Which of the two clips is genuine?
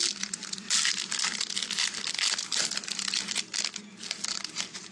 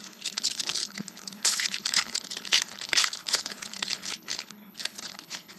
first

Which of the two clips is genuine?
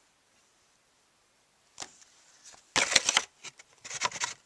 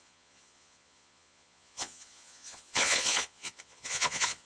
first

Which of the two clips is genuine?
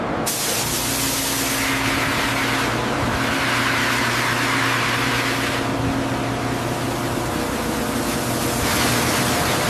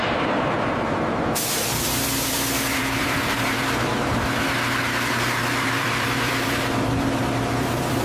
first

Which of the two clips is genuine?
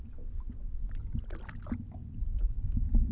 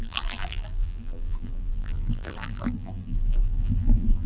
first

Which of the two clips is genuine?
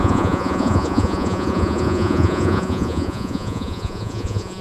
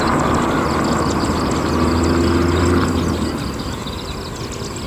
second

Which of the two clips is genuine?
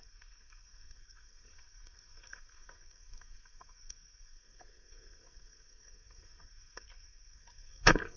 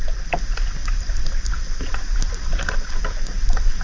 second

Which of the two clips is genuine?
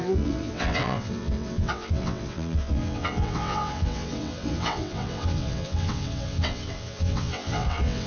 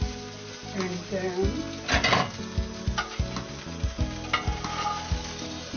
second